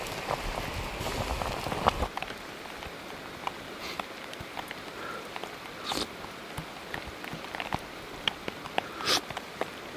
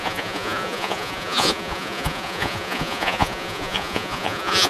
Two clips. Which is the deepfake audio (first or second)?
second